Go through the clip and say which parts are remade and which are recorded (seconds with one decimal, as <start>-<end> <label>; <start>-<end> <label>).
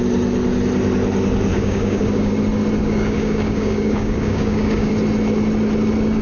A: 0.0-1.5 recorded; 1.5-2.3 remade; 2.3-2.8 recorded; 2.8-4.9 remade; 4.9-6.2 recorded